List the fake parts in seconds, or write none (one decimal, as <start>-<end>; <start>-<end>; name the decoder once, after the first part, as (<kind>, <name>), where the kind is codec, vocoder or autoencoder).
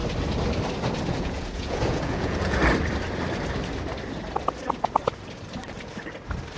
1.1-2.6 (vocoder, Vocos)